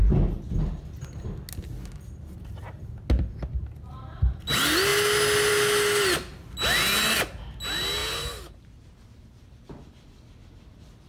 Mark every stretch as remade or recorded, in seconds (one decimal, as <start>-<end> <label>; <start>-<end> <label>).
0.0-8.0 recorded; 8.0-9.7 remade; 9.7-11.1 recorded